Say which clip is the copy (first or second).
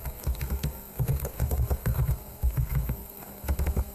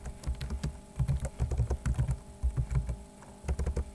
first